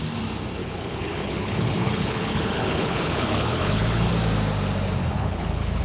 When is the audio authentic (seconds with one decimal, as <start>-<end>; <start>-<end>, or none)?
0.0-0.6; 4.1-5.0